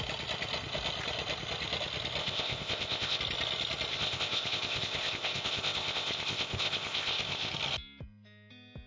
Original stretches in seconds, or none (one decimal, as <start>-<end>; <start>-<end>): 0.0-2.2; 3.2-3.9; 7.5-8.9